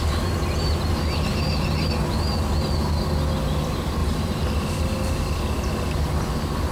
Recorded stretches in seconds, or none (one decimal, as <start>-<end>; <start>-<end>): 0.0-1.3; 1.9-4.0; 4.8-6.7